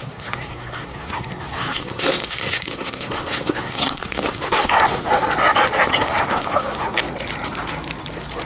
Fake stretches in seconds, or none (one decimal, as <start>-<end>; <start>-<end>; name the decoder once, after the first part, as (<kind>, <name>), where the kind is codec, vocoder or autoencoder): 0.0-5.1 (codec, SNAC); 5.9-7.0